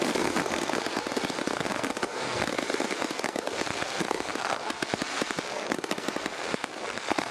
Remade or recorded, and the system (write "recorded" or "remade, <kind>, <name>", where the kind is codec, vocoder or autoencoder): remade, codec, SNAC